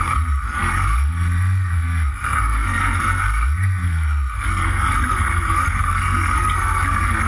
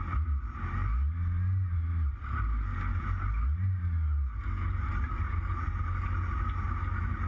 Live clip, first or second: second